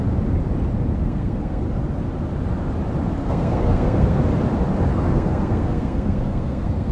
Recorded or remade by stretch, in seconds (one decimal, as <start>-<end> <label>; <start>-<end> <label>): 0.0-1.0 recorded; 1.0-1.6 remade; 1.6-3.2 recorded; 3.2-4.2 remade; 4.2-4.9 recorded; 4.9-6.9 remade